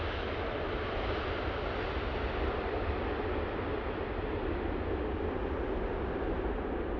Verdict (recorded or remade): recorded